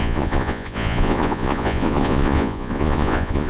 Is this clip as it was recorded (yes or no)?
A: no